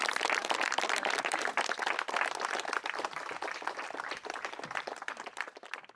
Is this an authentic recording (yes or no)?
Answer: no